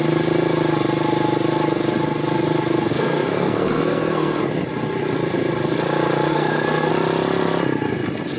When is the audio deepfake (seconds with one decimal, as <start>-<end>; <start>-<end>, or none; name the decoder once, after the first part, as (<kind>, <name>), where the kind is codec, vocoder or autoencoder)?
2.9-4.4 (codec, SNAC); 6.3-6.9

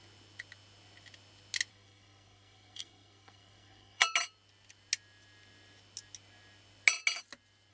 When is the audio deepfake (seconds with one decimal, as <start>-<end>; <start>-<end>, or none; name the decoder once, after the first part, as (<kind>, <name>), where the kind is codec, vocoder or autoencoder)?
1.7-4.0 (codec, SNAC)

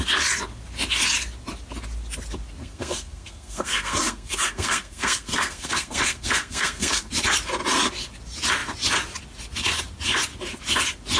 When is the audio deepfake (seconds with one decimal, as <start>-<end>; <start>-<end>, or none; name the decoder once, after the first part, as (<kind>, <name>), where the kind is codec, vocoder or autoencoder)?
2.6-7.1 (codec, SNAC)